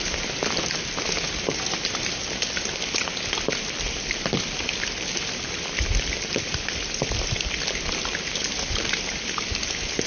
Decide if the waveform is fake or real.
real